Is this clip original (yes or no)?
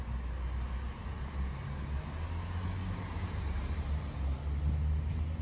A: yes